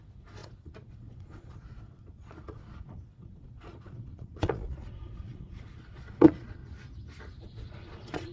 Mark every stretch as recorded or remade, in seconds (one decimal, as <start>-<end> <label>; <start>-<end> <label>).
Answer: 0.0-6.6 remade; 6.6-7.3 recorded; 7.3-8.3 remade